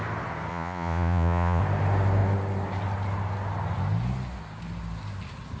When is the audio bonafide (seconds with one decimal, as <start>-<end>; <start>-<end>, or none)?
0.0-0.5; 1.6-5.6